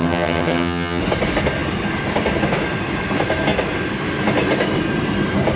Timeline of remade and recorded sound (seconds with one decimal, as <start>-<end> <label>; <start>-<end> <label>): 0.0-1.0 remade; 1.0-5.6 recorded